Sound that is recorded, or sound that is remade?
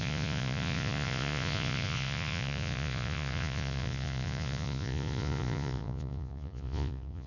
remade